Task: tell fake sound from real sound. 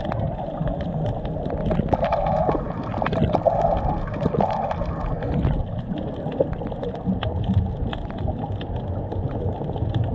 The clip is real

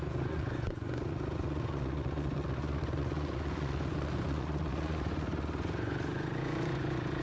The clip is fake